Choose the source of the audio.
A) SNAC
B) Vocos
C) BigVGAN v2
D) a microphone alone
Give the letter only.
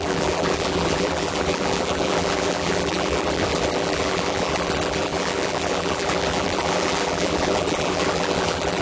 C